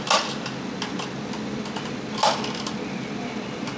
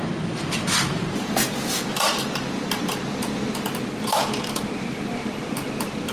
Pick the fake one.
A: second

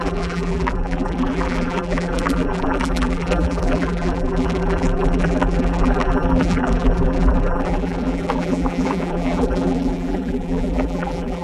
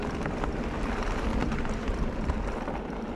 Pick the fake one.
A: first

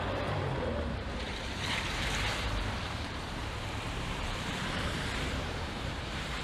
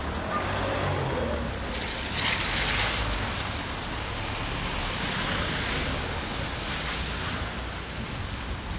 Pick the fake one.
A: first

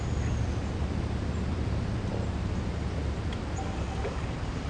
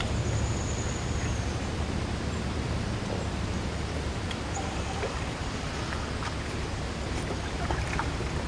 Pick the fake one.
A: second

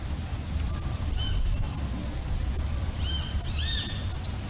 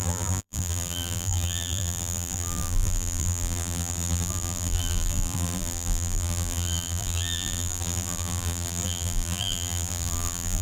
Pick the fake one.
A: second